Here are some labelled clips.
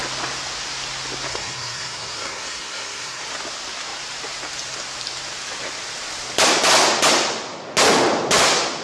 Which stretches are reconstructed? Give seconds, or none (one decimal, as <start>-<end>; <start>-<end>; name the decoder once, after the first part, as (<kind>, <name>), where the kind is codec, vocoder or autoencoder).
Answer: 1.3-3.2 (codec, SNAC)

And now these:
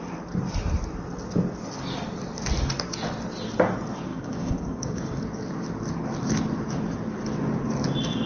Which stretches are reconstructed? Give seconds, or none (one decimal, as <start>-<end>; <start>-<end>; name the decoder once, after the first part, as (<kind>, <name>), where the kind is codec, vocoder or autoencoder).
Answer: 4.1-5.2 (codec, DAC)

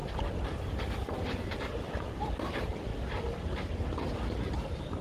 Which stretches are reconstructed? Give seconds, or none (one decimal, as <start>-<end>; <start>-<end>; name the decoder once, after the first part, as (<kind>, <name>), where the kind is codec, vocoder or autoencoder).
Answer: 0.9-2.9 (vocoder, BigVGAN v2); 4.4-5.0

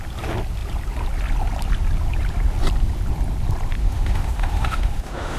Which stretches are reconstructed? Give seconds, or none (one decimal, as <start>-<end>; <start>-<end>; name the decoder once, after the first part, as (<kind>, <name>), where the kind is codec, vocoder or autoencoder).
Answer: 3.8-5.4 (autoencoder, DAC-VAE)

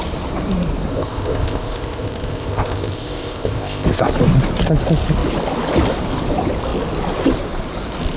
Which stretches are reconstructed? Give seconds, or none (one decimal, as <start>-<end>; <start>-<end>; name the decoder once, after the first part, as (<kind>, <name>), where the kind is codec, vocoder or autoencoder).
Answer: 0.9-4.1 (codec, ZipCodec)

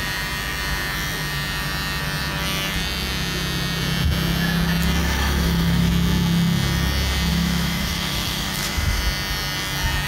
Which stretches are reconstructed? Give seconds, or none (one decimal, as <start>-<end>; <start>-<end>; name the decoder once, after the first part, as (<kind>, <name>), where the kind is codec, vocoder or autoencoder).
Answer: 5.0-5.9 (autoencoder, DAC-VAE); 7.3-9.0

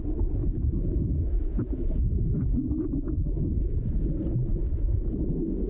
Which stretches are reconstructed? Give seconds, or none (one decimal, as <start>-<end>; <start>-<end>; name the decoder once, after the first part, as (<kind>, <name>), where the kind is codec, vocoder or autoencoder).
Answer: 0.4-3.6 (autoencoder, DAC-VAE); 4.5-5.1

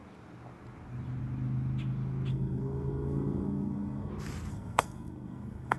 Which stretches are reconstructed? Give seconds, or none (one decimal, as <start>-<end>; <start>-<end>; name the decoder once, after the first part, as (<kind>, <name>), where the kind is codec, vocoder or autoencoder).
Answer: 2.3-4.1 (codec, SNAC); 4.5-5.8